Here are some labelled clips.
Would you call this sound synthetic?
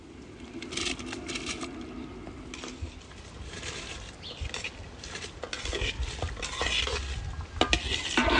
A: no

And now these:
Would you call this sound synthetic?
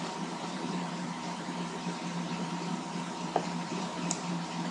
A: yes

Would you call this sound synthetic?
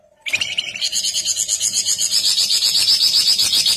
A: no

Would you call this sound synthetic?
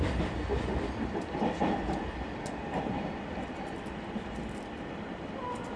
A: yes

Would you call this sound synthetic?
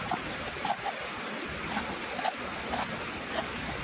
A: no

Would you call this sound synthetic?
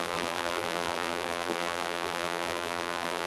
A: yes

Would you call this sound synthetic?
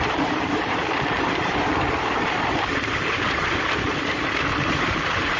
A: yes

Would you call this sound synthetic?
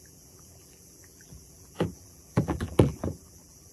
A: yes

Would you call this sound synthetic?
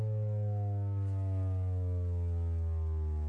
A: no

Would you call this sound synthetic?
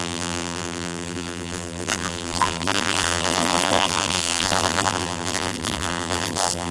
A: yes